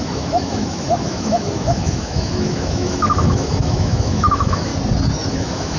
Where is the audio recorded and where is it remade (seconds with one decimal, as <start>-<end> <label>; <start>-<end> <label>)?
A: 0.0-4.7 remade; 4.7-5.3 recorded; 5.3-5.8 remade